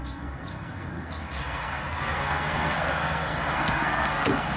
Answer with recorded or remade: remade